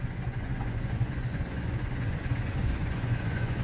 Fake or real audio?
fake